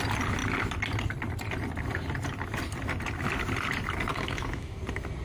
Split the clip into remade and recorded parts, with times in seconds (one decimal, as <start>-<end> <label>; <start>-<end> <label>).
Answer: 0.0-4.1 recorded; 4.1-4.8 remade; 4.8-5.2 recorded